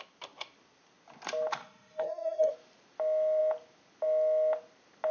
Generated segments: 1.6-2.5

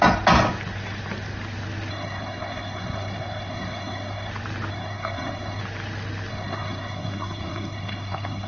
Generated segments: 1.9-4.3; 4.7-5.6; 6.3-8.5

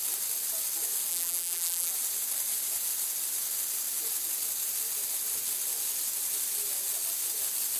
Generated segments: 1.1-1.9